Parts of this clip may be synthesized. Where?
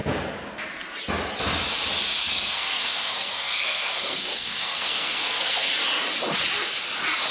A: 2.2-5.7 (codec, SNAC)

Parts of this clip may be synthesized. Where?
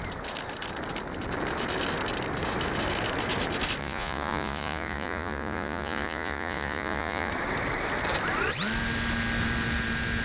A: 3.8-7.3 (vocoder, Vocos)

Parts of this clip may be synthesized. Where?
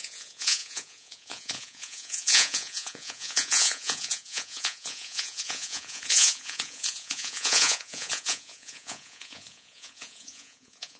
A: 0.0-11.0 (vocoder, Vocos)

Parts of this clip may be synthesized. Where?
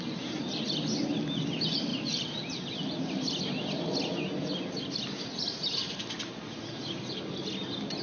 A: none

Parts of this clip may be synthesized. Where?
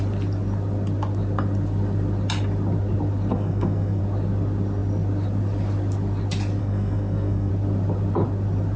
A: 3.3-4.0 (codec, SNAC); 6.6-7.5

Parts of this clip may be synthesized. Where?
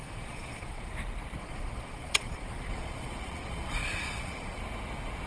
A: 0.0-0.9 (vocoder, Vocos); 1.4-4.6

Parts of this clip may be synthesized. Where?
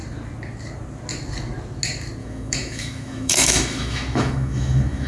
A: 2.2-5.1 (autoencoder, DAC-VAE)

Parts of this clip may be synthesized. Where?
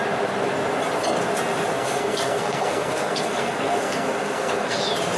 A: 1.7-4.8 (codec, SNAC)